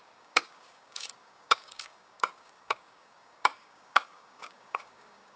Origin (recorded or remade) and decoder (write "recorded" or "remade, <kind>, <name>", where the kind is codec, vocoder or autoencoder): remade, codec, DAC